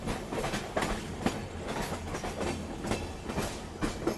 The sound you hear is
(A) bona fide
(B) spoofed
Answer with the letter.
A